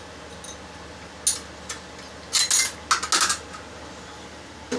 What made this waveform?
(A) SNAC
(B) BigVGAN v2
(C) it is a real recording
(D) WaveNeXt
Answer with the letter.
C